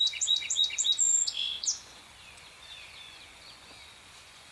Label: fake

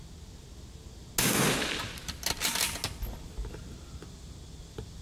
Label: real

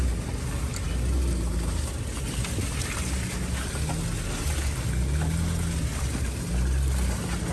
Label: real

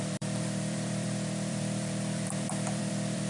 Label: fake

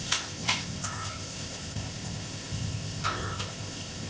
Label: fake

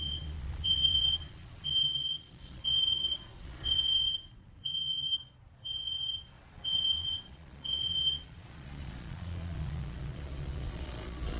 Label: fake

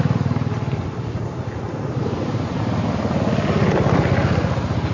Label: real